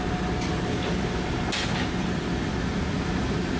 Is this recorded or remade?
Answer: recorded